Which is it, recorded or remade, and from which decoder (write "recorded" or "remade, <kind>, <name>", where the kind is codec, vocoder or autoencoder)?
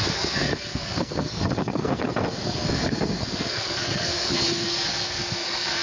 remade, codec, SNAC